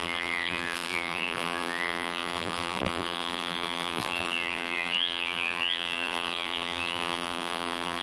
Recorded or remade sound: remade